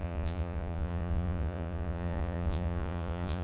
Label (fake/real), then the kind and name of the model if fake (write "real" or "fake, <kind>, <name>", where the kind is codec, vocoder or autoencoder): fake, vocoder, Vocos